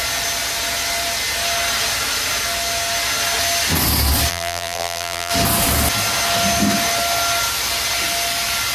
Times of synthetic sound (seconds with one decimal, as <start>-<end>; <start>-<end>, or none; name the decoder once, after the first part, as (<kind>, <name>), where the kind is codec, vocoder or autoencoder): 4.3-5.3 (vocoder, BigVGAN v2)